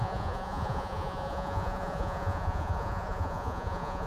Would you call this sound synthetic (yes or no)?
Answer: yes